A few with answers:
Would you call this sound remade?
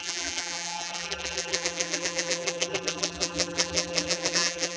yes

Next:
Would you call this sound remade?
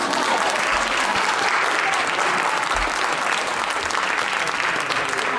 no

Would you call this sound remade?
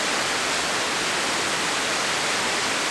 no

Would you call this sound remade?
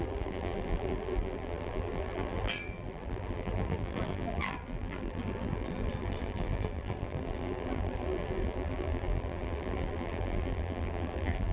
yes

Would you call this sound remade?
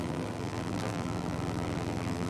yes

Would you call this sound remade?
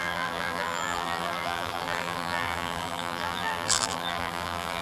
yes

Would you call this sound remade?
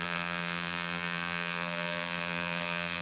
yes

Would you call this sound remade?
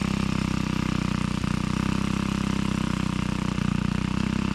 no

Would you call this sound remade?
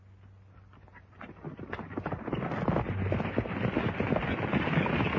no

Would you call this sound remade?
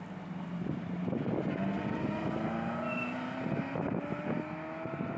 no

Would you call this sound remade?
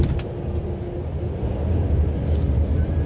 no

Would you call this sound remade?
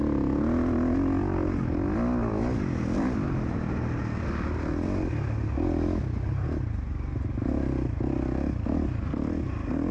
no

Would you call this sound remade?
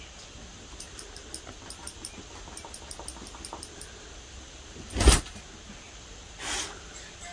no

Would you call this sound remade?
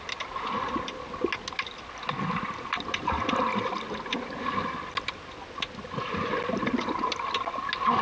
no